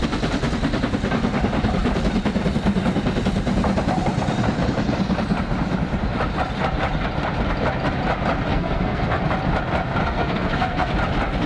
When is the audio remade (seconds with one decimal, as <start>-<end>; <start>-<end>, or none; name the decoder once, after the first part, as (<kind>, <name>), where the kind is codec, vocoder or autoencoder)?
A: 8.5-9.2 (codec, SNAC); 10.0-10.9